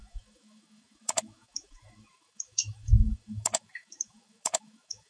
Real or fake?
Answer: fake